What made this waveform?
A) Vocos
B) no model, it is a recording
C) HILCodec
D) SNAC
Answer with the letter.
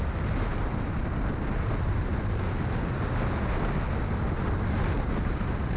B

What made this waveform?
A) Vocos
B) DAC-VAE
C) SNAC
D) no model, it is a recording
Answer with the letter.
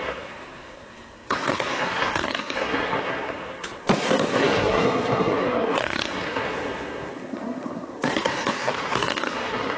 C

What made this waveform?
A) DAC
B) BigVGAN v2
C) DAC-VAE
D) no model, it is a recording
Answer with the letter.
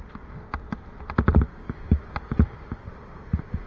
D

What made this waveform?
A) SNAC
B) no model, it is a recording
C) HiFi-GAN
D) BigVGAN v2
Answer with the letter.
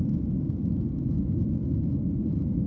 B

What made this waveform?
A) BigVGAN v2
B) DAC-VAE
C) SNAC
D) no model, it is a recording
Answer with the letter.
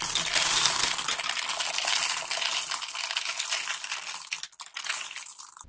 D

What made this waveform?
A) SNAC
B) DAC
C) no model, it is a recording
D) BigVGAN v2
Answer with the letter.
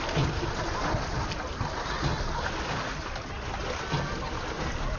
C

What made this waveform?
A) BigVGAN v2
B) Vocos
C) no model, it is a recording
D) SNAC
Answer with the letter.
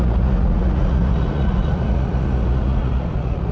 B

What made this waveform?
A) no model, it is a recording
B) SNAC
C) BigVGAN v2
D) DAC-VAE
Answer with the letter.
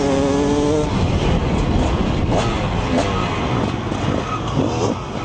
A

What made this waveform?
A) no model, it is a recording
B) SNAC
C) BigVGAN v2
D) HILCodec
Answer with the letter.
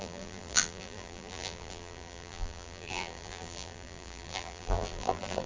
C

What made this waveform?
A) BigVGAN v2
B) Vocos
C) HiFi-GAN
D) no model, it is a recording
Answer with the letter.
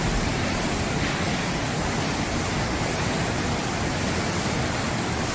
D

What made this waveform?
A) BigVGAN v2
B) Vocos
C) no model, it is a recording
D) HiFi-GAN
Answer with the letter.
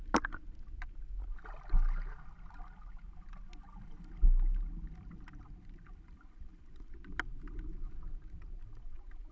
C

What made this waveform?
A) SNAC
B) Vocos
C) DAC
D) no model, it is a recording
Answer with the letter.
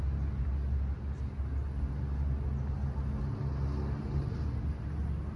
D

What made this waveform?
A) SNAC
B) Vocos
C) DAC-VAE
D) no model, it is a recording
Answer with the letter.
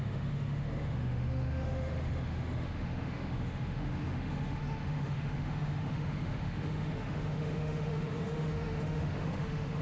C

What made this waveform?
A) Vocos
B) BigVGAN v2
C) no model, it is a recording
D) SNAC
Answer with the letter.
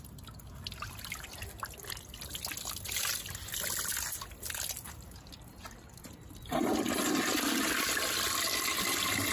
C